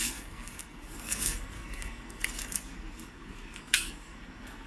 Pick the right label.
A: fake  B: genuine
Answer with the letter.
A